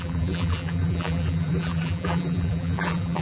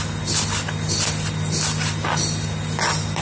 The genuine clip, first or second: second